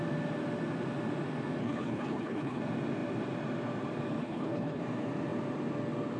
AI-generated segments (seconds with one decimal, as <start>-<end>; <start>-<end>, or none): 1.6-2.6; 4.2-4.8